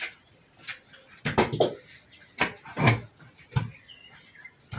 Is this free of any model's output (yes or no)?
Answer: yes